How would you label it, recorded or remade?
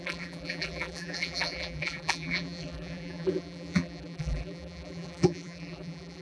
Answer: remade